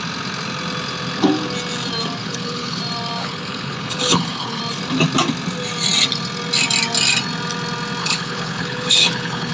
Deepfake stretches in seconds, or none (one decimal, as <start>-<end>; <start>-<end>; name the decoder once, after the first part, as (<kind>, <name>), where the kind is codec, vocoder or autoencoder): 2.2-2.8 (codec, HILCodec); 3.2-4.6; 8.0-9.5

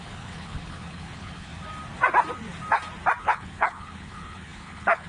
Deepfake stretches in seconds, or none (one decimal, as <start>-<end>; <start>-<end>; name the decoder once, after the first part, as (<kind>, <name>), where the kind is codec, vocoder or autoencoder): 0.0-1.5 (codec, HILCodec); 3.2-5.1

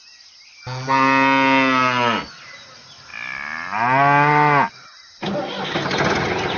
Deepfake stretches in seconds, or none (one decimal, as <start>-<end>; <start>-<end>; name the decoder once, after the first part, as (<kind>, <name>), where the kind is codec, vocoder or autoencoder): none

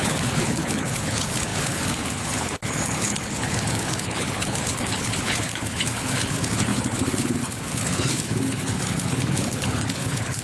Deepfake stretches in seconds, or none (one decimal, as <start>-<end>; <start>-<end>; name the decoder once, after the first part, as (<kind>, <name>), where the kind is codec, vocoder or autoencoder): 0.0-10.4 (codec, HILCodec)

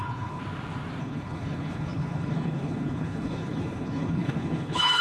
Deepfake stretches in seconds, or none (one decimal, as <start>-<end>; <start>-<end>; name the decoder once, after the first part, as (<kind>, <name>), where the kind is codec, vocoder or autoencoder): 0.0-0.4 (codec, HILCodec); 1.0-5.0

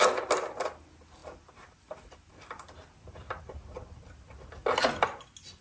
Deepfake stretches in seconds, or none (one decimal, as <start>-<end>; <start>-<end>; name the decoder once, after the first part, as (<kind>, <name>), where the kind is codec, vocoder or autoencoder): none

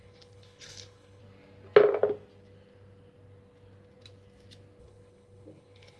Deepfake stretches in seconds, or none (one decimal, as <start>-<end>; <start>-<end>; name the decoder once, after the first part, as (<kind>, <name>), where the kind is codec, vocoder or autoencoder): 0.0-1.2 (codec, HILCodec); 4.8-6.0

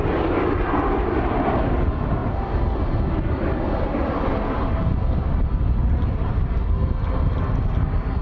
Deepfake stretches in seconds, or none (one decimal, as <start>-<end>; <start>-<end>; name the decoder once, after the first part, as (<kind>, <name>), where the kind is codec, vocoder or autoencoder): none